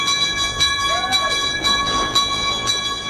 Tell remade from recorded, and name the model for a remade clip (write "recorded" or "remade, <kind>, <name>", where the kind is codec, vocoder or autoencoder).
remade, vocoder, BigVGAN v2